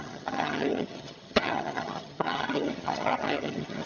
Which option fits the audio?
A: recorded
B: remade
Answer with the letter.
B